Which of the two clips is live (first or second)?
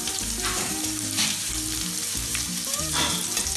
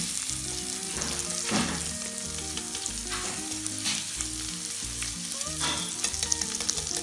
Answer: second